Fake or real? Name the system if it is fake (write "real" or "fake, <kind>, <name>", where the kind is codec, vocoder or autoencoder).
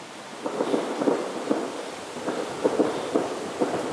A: real